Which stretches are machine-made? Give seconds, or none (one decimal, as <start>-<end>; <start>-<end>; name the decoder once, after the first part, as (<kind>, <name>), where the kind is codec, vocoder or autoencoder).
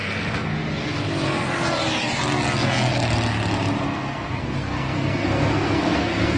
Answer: 3.8-6.4 (codec, SNAC)